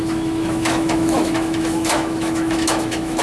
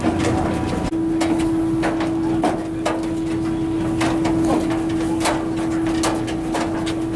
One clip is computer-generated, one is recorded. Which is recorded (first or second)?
second